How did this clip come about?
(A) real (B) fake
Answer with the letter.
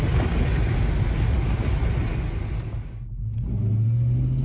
A